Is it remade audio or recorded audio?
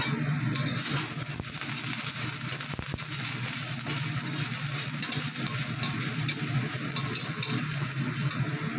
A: recorded